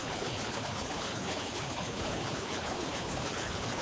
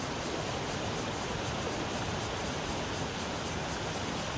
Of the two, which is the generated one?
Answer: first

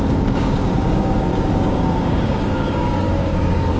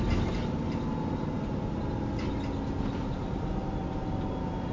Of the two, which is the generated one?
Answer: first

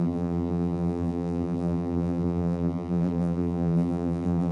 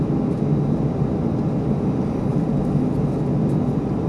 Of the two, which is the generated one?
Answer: first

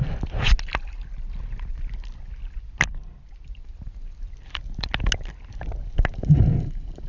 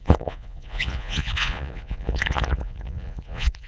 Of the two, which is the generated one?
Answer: second